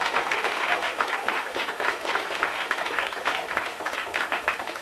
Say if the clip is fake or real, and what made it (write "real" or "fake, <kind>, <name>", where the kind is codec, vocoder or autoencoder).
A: fake, autoencoder, DAC-VAE